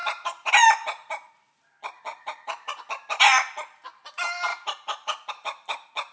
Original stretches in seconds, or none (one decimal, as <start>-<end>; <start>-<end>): 0.5-2.1; 2.7-4.5; 5.3-6.1